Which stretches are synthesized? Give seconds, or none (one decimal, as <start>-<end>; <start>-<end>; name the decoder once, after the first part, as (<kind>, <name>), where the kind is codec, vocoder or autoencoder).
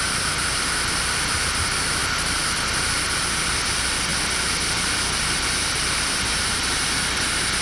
none